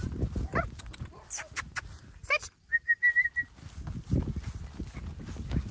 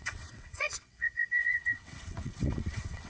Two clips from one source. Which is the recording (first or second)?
first